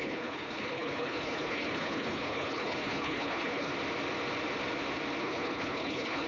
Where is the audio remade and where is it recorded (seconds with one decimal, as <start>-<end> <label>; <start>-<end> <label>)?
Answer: 0.0-3.7 remade; 3.7-5.2 recorded; 5.2-6.3 remade

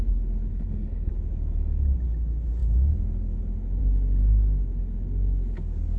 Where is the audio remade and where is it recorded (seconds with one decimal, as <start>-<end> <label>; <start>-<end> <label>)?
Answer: 0.0-0.5 recorded; 0.5-1.1 remade; 1.1-6.0 recorded

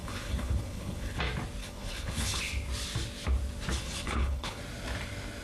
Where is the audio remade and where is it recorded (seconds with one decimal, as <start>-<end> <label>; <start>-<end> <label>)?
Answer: 0.0-1.2 remade; 1.2-1.6 recorded; 1.6-2.4 remade; 2.4-3.7 recorded; 3.7-4.6 remade; 4.6-5.4 recorded